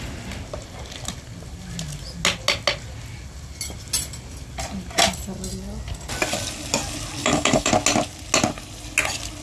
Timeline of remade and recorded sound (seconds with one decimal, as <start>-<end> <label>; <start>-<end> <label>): 0.0-7.2 recorded; 7.2-7.7 remade; 7.7-9.4 recorded